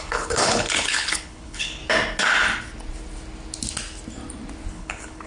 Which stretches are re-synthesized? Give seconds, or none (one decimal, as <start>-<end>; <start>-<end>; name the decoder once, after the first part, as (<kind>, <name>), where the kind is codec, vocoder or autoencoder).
0.0-1.8 (codec, HILCodec); 4.7-5.3